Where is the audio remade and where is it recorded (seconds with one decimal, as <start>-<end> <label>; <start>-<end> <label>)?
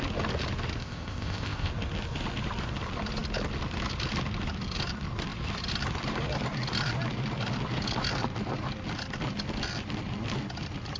0.0-0.8 recorded; 0.8-1.7 remade; 1.7-11.0 recorded